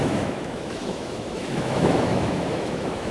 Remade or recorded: remade